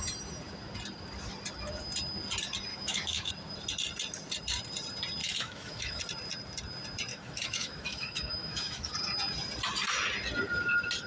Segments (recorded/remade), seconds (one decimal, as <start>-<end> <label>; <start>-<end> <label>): 0.0-2.7 recorded; 2.7-3.3 remade; 3.3-5.2 recorded; 5.2-6.0 remade; 6.0-7.1 recorded; 7.1-8.9 remade; 8.9-11.1 recorded

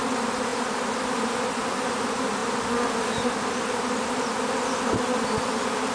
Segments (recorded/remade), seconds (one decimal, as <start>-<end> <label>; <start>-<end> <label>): 0.0-5.9 recorded

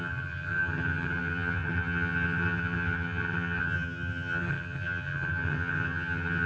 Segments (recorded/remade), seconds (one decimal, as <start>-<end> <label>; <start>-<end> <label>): 0.0-6.5 remade

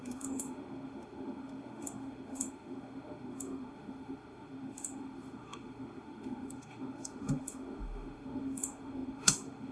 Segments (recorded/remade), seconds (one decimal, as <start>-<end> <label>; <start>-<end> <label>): 0.0-9.7 remade

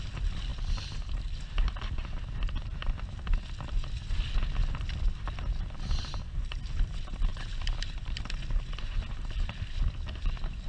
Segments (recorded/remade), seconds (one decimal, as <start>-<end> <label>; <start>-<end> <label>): 0.0-10.7 recorded